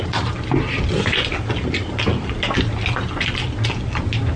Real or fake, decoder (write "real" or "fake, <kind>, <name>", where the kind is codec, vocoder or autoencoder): real